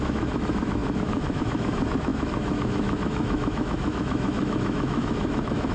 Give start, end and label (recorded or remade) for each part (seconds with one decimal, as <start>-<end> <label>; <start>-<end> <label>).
0.0-5.7 remade